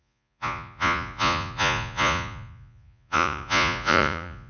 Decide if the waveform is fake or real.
fake